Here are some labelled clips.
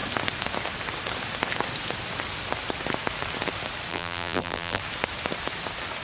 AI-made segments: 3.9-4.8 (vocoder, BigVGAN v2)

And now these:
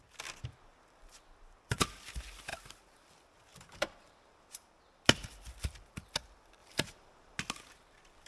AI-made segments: 3.5-4.8 (vocoder, BigVGAN v2); 6.6-7.4

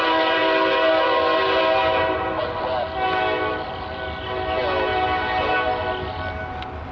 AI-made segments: 4.9-5.5 (vocoder, BigVGAN v2)

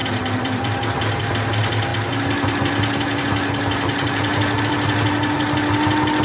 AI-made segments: 0.0-1.2 (vocoder, BigVGAN v2)

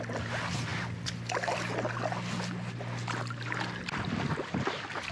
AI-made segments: none

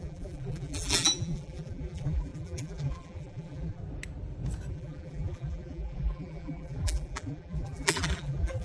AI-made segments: 0.0-3.8 (vocoder, BigVGAN v2); 4.7-8.6

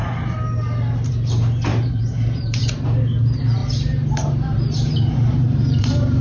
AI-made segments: 1.7-2.6 (vocoder, BigVGAN v2); 3.6-6.2